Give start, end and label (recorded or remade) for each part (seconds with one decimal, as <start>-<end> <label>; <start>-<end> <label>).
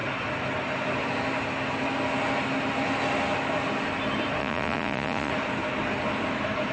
0.0-4.4 recorded; 4.4-5.3 remade; 5.3-6.7 recorded